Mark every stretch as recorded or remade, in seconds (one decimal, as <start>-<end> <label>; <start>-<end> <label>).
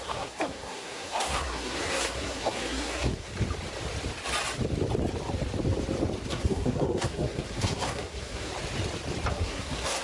0.0-3.3 remade; 3.3-6.3 recorded; 6.3-8.5 remade; 8.5-9.3 recorded; 9.3-10.0 remade